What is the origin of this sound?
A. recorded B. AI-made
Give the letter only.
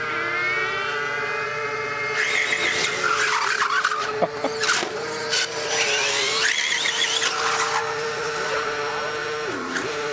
A